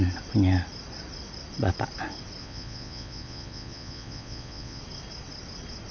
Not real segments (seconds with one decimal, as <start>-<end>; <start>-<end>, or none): 2.4-4.8